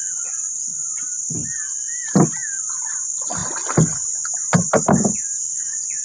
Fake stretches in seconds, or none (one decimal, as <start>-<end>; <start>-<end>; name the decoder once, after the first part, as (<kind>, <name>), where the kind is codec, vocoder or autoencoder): none